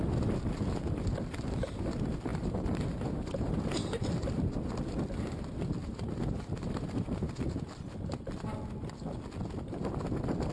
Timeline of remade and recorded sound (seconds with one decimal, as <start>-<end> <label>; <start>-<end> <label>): 0.0-2.3 recorded; 2.3-3.6 remade; 3.6-5.8 recorded; 5.8-6.9 remade; 6.9-10.5 recorded